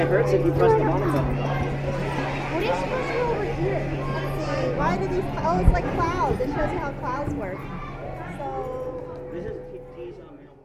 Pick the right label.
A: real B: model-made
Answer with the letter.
A